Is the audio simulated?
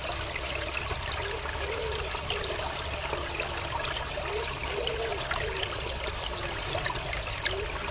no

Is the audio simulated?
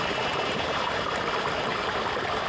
no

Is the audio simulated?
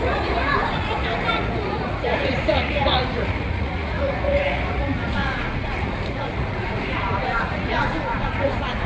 yes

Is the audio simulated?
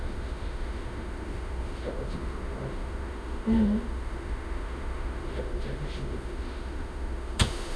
yes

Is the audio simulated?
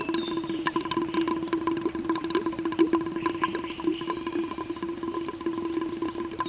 no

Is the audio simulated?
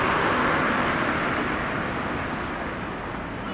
no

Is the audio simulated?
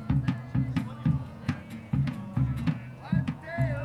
yes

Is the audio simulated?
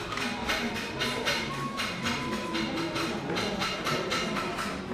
no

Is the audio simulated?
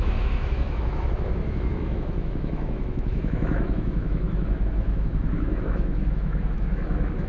yes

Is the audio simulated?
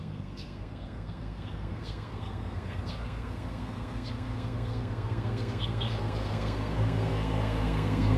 yes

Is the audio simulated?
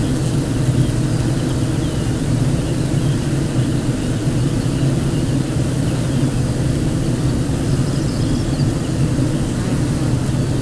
no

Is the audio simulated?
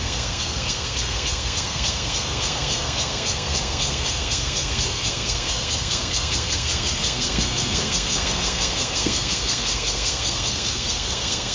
yes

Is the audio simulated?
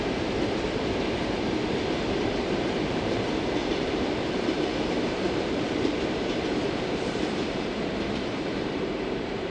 yes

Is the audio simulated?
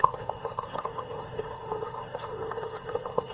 yes